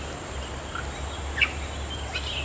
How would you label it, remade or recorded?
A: recorded